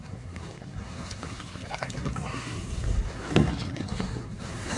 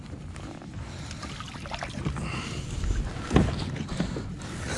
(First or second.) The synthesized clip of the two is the first